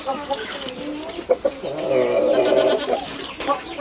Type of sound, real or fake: real